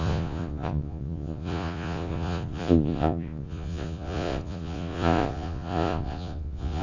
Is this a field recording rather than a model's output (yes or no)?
no